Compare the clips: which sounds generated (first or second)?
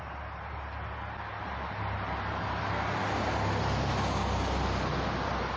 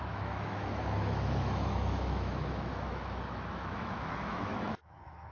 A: second